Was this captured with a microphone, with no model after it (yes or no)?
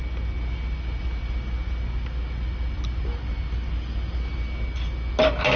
yes